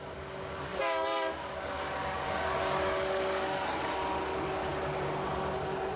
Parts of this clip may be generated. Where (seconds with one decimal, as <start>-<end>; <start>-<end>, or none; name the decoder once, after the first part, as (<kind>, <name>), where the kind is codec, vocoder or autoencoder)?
0.0-4.7 (codec, DAC); 5.3-6.0